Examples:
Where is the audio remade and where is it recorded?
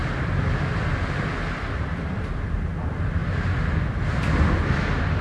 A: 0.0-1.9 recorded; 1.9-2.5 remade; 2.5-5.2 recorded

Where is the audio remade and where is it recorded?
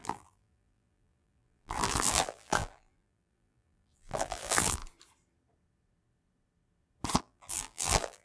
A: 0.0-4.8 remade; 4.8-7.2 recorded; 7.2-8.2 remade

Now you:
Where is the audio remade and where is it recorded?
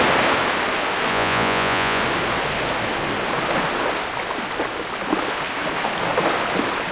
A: 0.0-1.1 recorded; 1.1-2.0 remade; 2.0-6.9 recorded